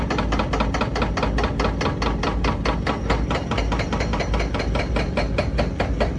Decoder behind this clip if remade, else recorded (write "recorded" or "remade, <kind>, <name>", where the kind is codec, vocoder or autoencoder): recorded